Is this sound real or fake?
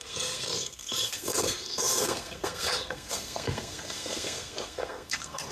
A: fake